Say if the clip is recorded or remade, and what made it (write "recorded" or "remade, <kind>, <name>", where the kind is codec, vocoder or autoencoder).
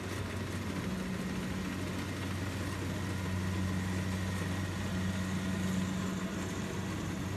recorded